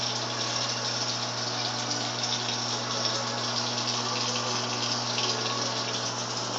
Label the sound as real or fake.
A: real